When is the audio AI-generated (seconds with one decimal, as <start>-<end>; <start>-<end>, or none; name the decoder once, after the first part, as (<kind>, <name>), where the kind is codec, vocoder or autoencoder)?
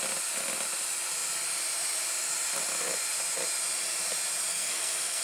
4.5-5.2 (codec, SNAC)